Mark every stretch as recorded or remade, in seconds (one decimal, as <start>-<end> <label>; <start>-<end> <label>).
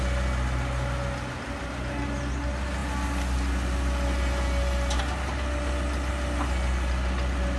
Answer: 0.0-7.6 recorded